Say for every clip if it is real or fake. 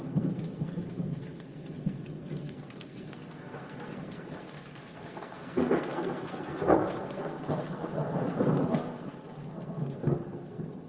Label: fake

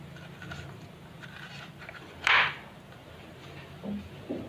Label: real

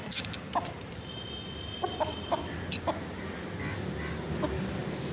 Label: real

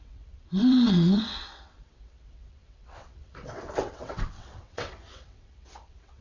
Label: fake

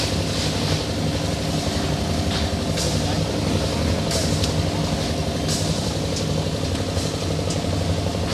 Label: real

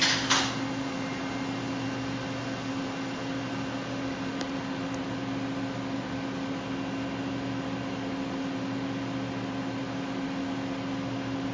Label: real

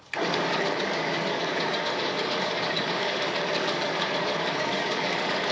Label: fake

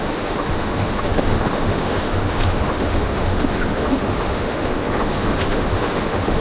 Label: fake